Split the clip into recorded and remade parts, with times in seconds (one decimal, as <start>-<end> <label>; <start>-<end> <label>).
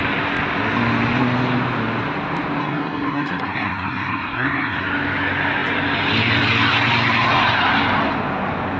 0.0-2.6 recorded; 2.6-4.9 remade; 4.9-8.8 recorded